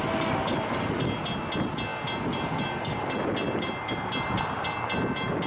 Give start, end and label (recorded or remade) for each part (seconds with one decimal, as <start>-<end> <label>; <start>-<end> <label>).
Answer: 0.0-5.5 recorded